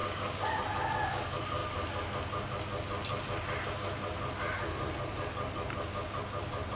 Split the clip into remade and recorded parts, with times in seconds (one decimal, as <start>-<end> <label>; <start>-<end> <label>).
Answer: 0.0-0.6 remade; 0.6-6.8 recorded